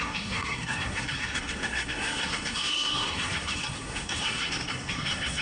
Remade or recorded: remade